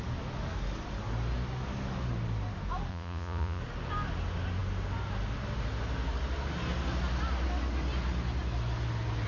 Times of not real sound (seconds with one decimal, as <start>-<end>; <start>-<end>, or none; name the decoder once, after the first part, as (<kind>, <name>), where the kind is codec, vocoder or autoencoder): 2.9-3.6 (vocoder, Vocos)